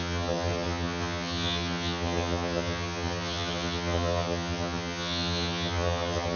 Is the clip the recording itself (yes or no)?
no